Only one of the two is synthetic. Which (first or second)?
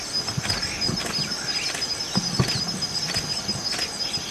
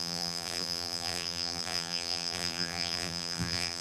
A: second